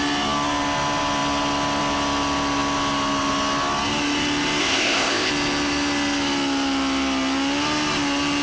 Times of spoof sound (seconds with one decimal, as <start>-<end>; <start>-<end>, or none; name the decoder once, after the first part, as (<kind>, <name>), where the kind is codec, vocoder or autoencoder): 4.6-5.3 (codec, ZipCodec)